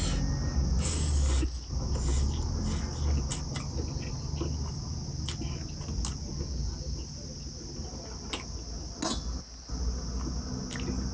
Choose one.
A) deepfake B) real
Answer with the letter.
B